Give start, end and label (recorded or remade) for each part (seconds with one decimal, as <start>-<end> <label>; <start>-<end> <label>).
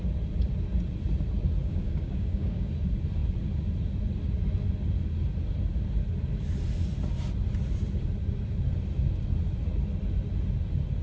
0.0-1.6 recorded; 1.6-2.7 remade; 2.7-11.0 recorded